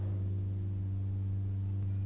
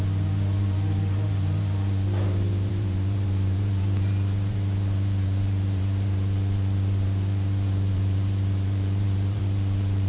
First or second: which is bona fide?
first